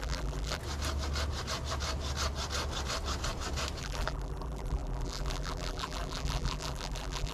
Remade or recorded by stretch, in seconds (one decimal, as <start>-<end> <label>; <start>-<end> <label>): 0.0-0.6 remade; 0.6-3.8 recorded; 3.8-7.3 remade